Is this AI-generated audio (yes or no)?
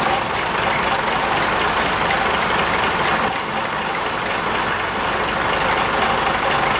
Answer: no